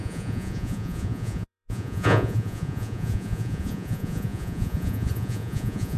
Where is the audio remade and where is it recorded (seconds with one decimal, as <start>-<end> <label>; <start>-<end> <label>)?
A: 0.0-6.0 remade